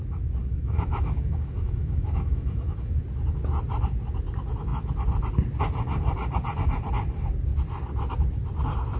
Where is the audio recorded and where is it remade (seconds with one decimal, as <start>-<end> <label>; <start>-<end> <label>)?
0.0-0.4 recorded; 0.4-3.0 remade; 3.0-9.0 recorded